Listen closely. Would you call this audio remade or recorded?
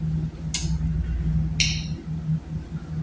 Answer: recorded